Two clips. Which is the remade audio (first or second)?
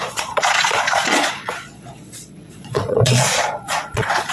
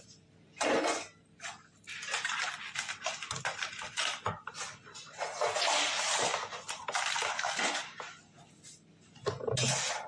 first